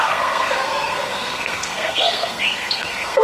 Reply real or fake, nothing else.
fake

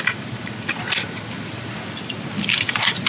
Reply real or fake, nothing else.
real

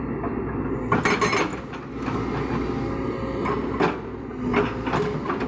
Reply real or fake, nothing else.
real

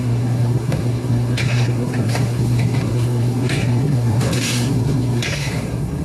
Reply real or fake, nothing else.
fake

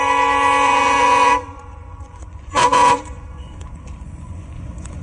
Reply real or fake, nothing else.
fake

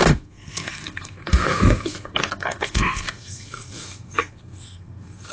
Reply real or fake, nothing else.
fake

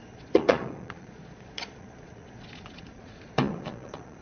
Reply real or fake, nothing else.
fake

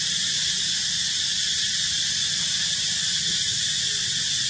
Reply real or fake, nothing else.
real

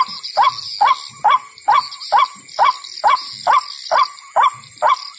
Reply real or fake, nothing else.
real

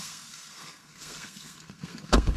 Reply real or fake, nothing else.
fake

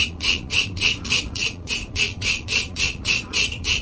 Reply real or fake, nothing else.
fake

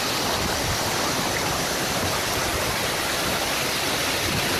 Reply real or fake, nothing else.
fake